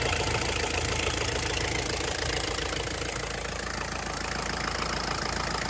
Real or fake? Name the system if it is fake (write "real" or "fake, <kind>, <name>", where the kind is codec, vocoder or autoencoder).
real